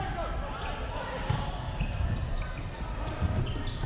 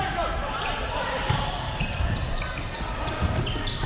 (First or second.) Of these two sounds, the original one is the first